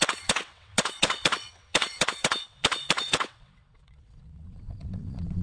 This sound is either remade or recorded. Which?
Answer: remade